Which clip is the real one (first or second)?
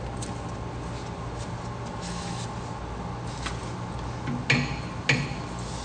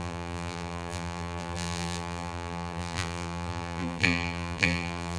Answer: first